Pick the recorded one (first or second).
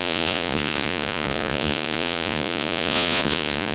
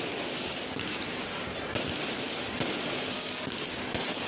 second